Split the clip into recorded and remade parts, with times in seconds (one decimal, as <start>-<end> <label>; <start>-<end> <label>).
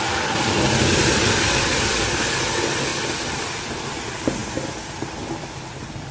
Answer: 0.0-1.2 recorded; 1.2-2.4 remade; 2.4-6.1 recorded